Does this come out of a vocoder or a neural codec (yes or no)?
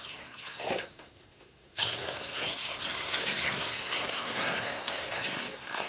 yes